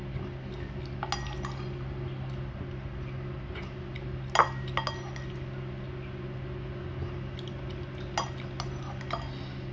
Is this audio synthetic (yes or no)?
no